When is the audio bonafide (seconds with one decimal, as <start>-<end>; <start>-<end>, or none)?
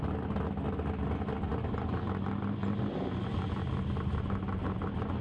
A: 0.0-5.2